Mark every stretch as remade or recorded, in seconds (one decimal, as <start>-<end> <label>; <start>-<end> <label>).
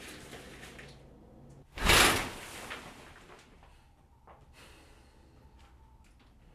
0.0-6.5 recorded